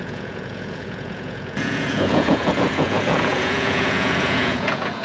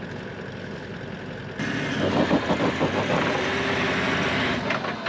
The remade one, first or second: first